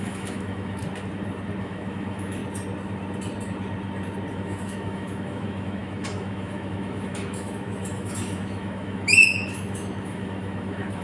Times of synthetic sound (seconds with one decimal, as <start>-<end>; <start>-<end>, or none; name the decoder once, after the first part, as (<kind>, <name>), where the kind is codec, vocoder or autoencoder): 0.0-0.8 (autoencoder, DAC-VAE); 1.6-2.4; 4.3-11.0